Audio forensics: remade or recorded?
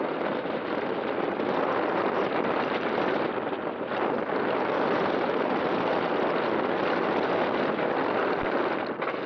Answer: recorded